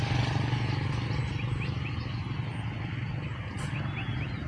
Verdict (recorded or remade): recorded